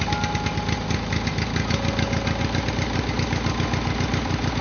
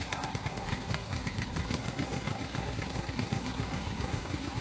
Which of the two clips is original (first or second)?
first